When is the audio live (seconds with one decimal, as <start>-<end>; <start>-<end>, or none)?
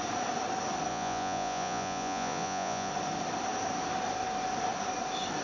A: 0.0-0.9; 2.9-5.4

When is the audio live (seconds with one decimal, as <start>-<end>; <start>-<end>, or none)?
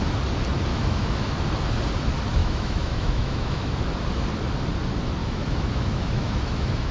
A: 0.0-0.7; 1.3-2.4; 3.8-5.2